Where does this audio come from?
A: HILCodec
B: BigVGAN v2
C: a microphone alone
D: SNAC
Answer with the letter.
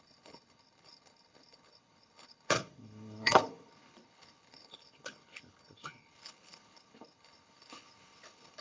A